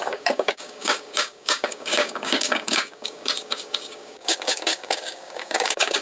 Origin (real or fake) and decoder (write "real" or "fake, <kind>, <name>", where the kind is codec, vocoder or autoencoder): fake, codec, DAC